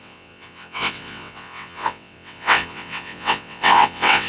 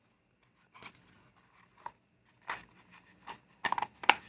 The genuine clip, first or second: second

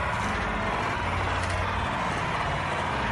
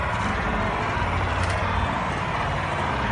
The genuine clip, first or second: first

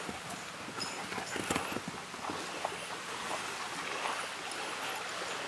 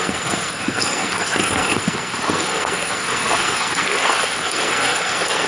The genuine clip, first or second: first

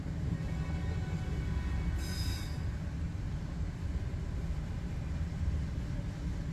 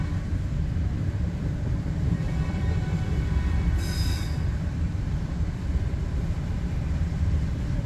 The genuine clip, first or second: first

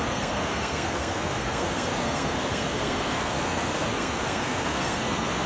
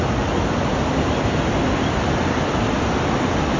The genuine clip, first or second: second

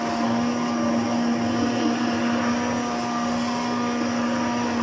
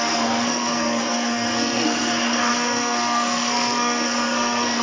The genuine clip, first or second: first